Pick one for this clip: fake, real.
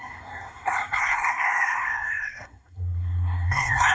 fake